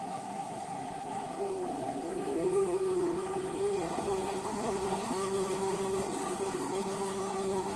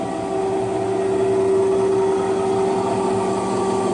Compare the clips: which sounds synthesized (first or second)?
first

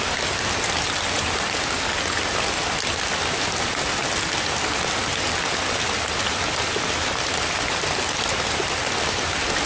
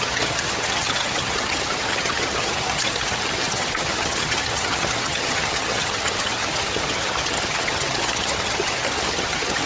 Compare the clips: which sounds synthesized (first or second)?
second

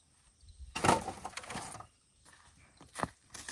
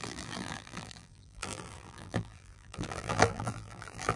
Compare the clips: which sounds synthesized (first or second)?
second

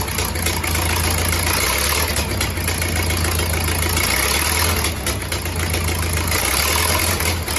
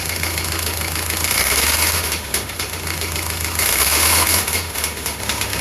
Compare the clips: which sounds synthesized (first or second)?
second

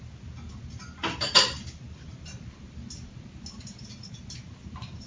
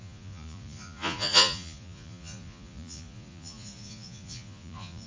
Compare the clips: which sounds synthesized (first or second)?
second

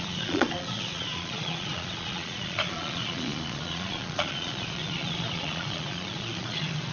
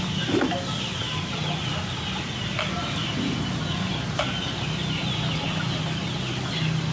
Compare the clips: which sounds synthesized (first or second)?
first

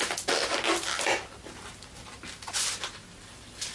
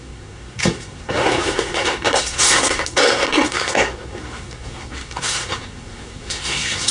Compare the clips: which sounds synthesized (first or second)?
second